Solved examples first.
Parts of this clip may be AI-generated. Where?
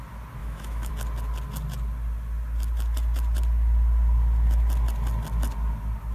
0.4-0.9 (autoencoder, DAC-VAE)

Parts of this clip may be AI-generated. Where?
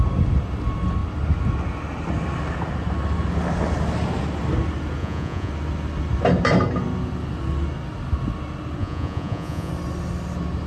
5.0-5.5 (vocoder, Vocos); 8.8-9.7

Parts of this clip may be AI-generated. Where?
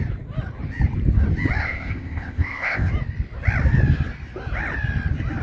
1.6-2.9 (codec, ZipCodec)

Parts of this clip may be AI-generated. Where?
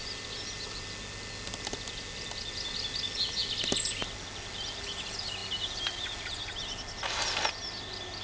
none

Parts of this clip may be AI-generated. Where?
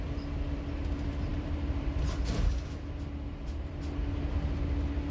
1.3-2.0 (vocoder, BigVGAN v2)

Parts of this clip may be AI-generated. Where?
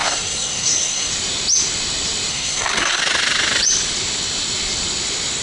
0.0-1.1 (codec, SNAC); 2.3-3.0